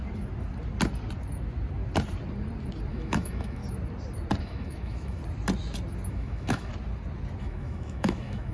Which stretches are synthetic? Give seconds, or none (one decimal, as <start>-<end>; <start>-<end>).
2.9-3.6; 4.4-5.2; 6.1-6.7; 7.4-8.5